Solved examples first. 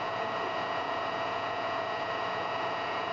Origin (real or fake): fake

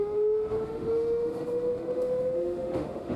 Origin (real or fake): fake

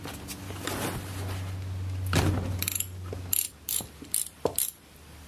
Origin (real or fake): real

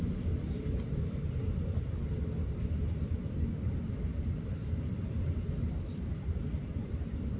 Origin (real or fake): real